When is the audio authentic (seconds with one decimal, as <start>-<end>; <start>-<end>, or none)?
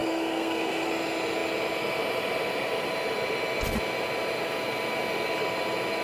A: 0.9-6.0